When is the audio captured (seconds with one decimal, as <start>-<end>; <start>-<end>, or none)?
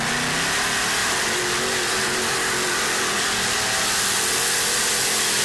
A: 0.0-5.4